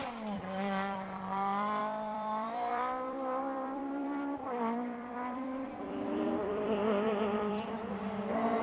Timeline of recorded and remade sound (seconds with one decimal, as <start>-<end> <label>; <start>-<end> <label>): 0.0-8.6 remade